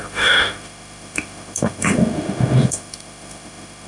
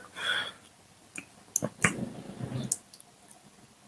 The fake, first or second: first